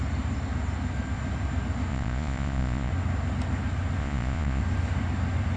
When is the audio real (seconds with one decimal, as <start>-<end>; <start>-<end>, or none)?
0.0-1.9; 2.9-4.0; 4.6-5.6

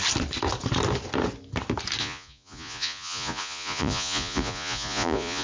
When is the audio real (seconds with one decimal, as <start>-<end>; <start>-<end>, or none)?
0.0-2.0

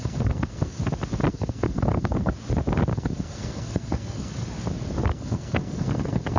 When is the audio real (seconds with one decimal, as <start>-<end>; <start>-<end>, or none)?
0.8-1.3; 2.3-2.9; 4.3-5.1

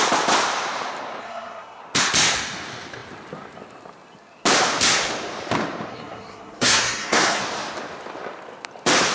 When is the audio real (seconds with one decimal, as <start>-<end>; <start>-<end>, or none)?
0.0-1.2; 1.8-5.9; 7.4-9.1

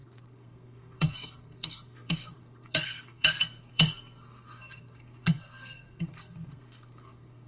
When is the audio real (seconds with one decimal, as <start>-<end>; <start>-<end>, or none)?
none